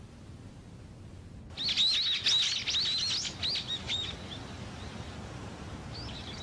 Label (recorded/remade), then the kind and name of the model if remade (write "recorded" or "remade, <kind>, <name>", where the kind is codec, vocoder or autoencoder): recorded